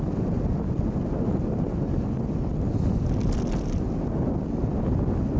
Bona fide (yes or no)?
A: yes